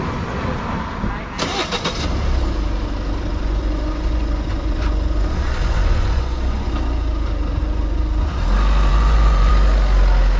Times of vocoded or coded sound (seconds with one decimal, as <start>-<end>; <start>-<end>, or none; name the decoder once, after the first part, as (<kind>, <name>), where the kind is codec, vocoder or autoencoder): 3.3-6.7 (vocoder, Vocos); 7.6-8.4; 8.9-9.5